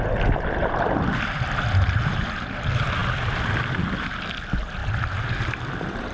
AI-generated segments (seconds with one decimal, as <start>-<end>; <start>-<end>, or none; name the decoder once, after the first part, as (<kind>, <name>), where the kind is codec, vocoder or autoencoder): none